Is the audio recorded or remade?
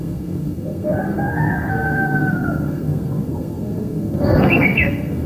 remade